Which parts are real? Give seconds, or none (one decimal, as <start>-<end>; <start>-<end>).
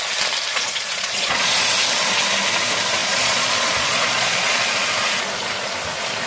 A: 0.0-0.5; 1.7-3.0; 4.6-6.3